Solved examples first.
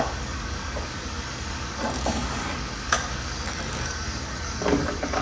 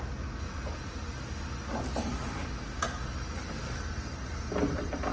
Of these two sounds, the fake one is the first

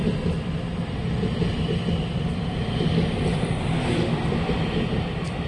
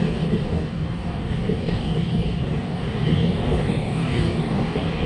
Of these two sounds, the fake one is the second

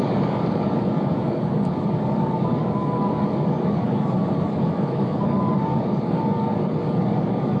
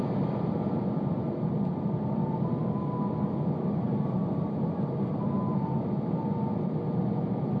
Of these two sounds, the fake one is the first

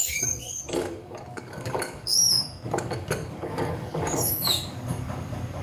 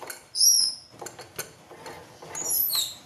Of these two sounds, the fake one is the first